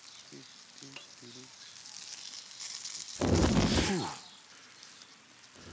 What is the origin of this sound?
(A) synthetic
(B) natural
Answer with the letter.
B